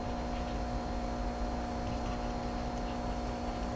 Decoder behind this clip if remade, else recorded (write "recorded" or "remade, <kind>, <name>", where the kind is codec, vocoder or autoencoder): recorded